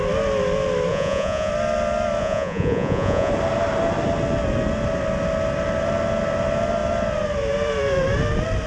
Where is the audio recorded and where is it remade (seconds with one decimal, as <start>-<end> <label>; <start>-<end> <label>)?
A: 0.0-0.9 recorded; 0.9-1.5 remade; 1.5-2.2 recorded; 2.2-3.3 remade; 3.3-8.7 recorded